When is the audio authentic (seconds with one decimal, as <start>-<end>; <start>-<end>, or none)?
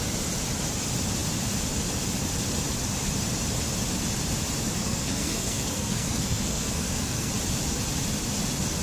0.0-4.8; 7.3-8.8